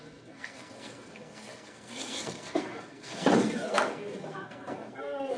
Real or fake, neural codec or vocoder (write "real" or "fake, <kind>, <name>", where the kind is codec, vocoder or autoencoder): fake, codec, SNAC